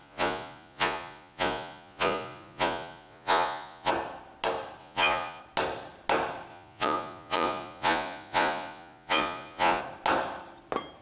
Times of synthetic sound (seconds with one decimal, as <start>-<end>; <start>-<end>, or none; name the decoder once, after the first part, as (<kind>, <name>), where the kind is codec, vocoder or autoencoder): 0.0-3.9 (vocoder, Vocos); 4.8-5.4; 6.5-9.8